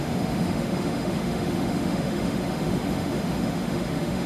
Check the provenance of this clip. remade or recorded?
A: remade